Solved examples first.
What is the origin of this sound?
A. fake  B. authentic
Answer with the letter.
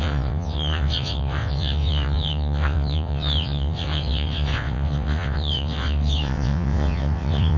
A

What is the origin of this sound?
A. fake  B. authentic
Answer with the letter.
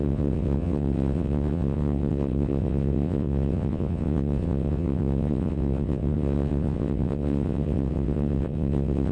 A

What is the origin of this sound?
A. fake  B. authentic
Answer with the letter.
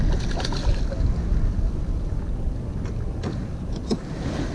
B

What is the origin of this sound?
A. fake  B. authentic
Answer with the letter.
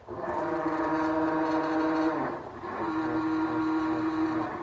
B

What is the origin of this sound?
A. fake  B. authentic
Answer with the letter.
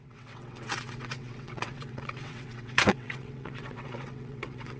A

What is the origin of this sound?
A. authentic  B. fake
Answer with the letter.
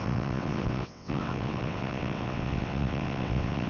B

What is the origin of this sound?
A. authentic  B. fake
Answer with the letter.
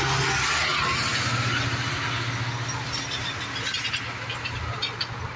A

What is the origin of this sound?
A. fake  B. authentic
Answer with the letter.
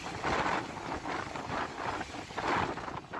B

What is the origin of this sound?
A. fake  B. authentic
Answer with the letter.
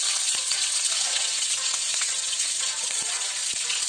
A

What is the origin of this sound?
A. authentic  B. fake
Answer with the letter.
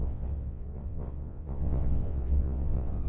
B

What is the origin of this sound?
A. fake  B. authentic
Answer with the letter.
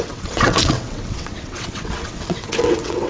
A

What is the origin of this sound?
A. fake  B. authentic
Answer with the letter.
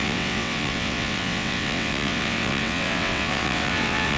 A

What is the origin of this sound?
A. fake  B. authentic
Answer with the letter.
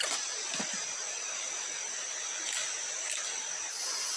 B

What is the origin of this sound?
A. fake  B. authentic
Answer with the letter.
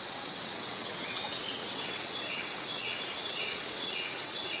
A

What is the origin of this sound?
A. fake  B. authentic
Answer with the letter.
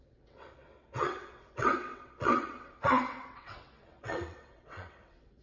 A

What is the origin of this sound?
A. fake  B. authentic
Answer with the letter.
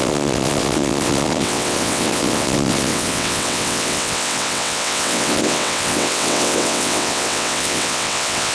A